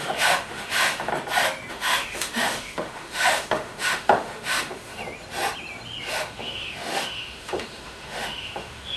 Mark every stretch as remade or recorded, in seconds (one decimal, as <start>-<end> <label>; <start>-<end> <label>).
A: 0.0-1.1 remade; 1.1-1.7 recorded; 1.7-5.0 remade; 5.0-6.1 recorded; 6.1-9.0 remade